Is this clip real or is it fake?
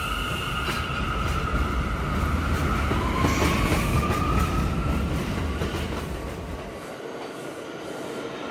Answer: real